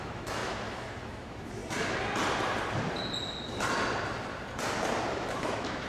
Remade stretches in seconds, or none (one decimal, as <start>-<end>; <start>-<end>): 0.0-1.6; 5.1-5.9